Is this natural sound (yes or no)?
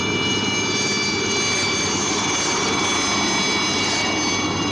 yes